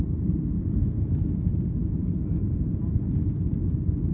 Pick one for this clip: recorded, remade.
recorded